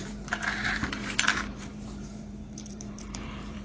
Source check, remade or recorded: remade